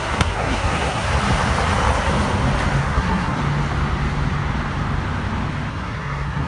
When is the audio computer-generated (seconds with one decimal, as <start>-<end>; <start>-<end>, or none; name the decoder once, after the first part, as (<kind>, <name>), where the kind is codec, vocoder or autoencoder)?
0.0-1.1 (codec, SNAC); 2.8-3.4; 5.7-6.5